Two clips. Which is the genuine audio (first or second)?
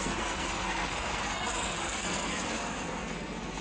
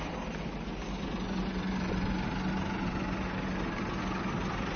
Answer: second